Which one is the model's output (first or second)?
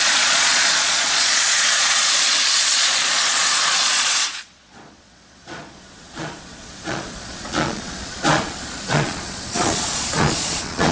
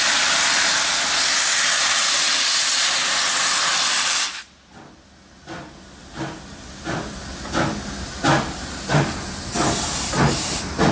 first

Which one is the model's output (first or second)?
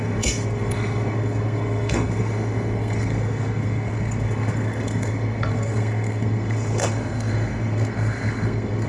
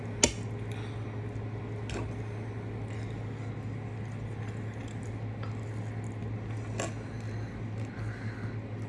first